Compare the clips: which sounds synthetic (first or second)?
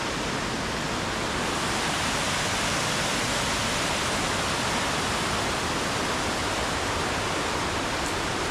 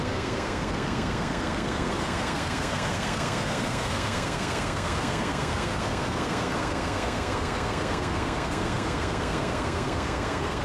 second